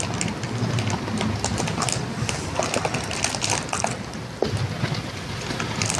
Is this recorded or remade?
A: recorded